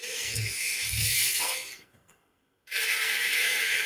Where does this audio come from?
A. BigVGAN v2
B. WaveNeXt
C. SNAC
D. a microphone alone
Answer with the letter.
C